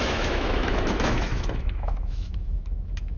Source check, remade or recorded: remade